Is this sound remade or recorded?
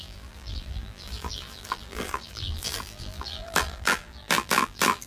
remade